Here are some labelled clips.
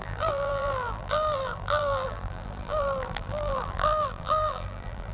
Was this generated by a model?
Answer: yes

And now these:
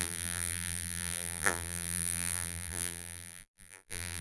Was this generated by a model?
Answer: yes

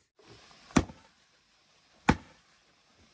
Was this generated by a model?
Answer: no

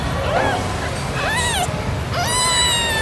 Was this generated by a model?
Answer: no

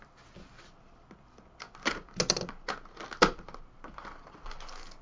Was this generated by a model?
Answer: no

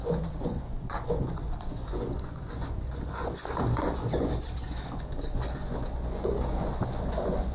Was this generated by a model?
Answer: yes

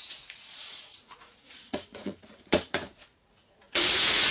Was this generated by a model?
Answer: yes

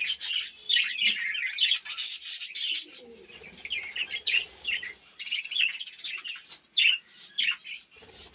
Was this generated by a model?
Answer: no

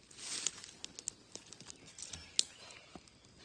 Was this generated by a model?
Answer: no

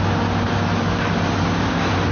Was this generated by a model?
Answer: no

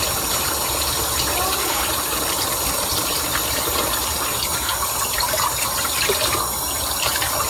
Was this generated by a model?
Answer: no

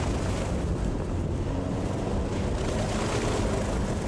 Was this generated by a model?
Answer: no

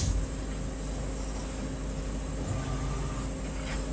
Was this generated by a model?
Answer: no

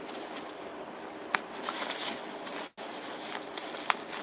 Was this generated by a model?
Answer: no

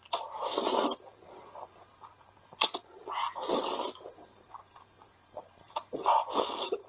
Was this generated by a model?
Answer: no